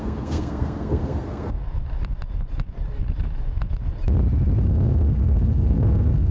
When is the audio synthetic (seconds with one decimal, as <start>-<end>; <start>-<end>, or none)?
0.0-1.6; 4.6-6.3